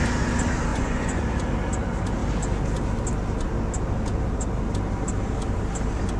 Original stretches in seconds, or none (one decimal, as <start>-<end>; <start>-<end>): 0.0-0.7; 1.2-6.2